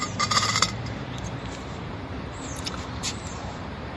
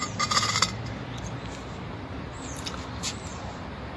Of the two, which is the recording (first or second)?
second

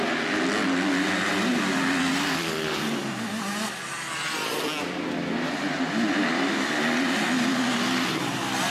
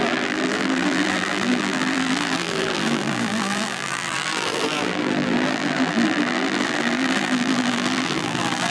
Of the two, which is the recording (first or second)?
first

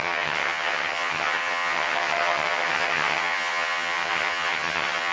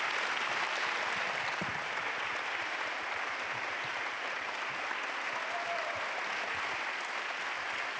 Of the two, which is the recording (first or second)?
second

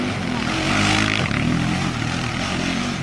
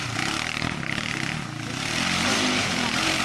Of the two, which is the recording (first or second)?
first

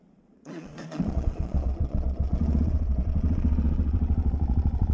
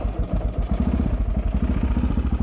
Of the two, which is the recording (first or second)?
second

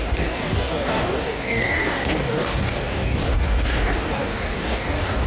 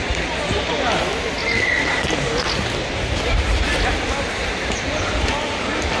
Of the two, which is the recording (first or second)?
second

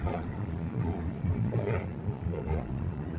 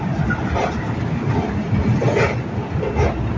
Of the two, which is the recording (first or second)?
second